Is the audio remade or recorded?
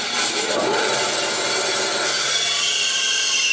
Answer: recorded